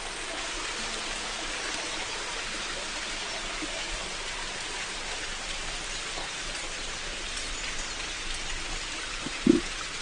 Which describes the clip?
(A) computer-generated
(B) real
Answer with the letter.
B